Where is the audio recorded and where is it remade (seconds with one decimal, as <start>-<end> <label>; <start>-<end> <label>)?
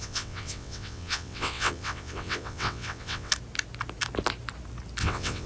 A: 0.0-3.3 remade; 3.3-5.0 recorded; 5.0-5.5 remade